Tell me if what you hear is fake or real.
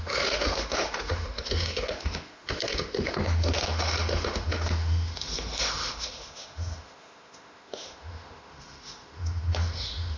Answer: fake